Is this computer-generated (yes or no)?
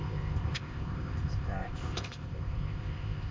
yes